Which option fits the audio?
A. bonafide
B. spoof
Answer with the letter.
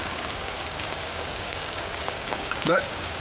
B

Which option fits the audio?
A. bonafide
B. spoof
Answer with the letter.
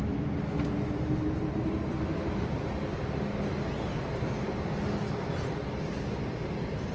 A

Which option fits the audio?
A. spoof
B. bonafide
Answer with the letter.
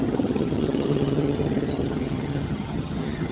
A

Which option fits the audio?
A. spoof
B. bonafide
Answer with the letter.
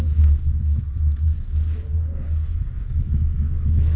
A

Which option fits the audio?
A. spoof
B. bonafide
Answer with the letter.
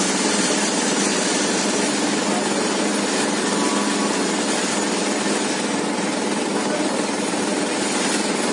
B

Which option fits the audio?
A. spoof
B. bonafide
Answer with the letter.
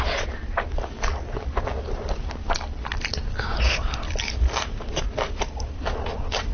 B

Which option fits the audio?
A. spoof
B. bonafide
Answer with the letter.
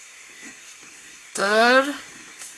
A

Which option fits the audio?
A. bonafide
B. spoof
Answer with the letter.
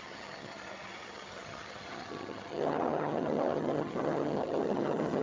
B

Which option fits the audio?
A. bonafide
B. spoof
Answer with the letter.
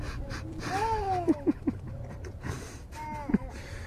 A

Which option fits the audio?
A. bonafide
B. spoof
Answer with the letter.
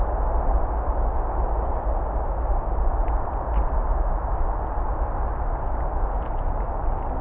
A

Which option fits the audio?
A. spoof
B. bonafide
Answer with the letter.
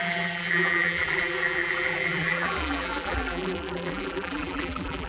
A